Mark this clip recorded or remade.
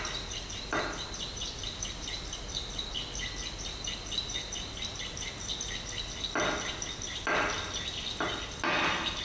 recorded